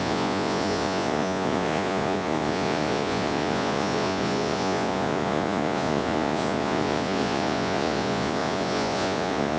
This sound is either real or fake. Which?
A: fake